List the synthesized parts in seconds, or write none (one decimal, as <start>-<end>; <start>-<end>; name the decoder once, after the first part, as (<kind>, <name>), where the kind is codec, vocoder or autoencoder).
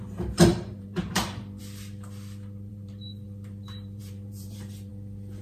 0.5-1.6 (vocoder, BigVGAN v2); 2.7-4.9